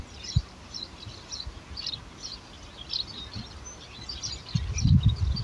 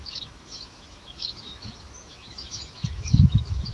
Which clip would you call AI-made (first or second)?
second